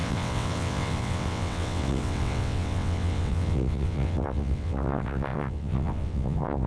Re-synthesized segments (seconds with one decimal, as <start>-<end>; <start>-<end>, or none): 0.0-6.7